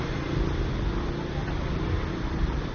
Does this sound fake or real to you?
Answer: real